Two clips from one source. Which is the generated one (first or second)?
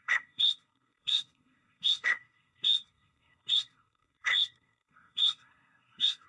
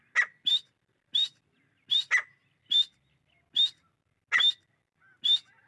first